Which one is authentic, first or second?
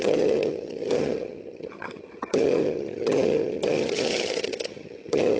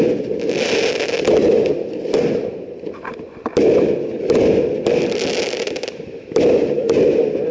second